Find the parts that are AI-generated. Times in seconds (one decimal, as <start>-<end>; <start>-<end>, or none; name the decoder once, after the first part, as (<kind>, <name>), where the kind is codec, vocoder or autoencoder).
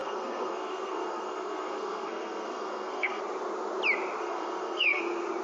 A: 0.0-3.2 (codec, SNAC); 4.2-5.0